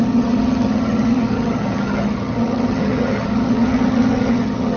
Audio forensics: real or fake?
fake